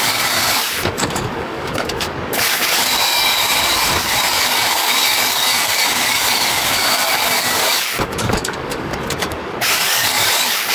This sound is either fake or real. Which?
fake